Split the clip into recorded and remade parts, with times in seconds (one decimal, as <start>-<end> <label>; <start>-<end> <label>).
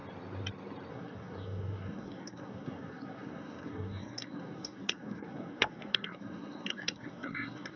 0.0-0.9 recorded; 0.9-7.8 remade